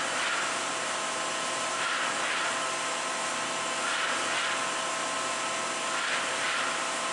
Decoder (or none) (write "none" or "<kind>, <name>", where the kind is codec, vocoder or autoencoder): none